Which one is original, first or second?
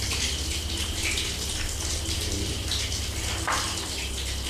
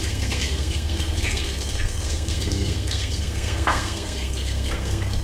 first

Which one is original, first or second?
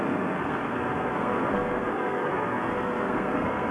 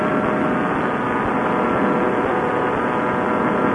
second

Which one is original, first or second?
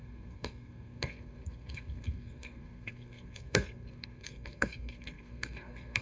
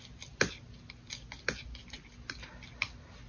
second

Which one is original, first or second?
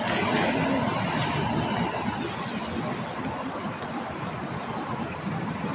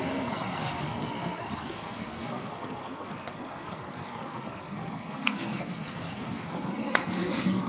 first